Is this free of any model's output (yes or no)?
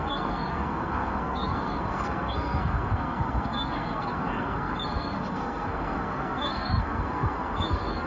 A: no